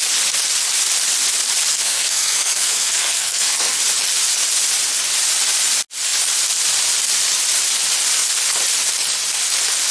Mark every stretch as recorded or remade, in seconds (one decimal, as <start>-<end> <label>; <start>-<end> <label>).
0.0-1.7 recorded; 1.7-3.8 remade; 3.8-9.9 recorded